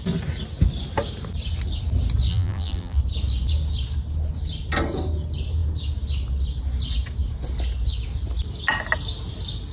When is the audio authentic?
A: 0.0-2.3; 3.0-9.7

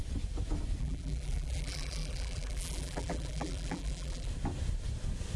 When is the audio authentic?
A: 0.0-0.8; 4.3-5.4

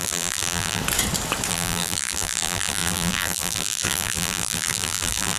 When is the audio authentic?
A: 0.8-1.5

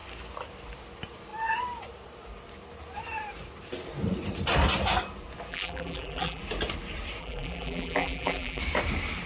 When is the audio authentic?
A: 0.0-5.5; 6.4-7.2; 8.6-9.3